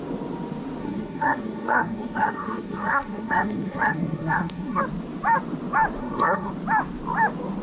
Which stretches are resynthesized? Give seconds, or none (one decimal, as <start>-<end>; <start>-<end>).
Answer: 0.8-4.8; 6.0-6.5